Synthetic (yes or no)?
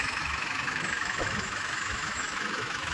yes